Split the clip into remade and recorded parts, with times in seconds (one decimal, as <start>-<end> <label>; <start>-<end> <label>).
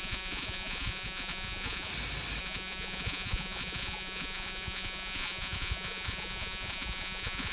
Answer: 0.0-1.9 remade; 1.9-2.4 recorded; 2.4-7.5 remade